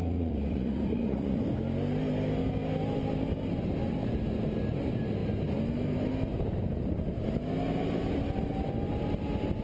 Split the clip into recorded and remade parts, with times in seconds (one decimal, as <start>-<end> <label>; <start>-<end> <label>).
0.0-1.4 remade; 1.4-9.6 recorded